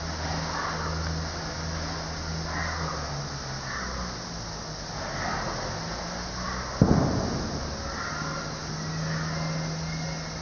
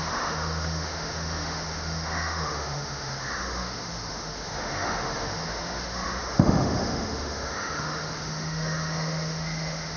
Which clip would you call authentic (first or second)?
first